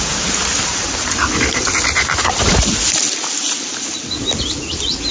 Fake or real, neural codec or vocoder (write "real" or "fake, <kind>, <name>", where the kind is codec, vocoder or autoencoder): real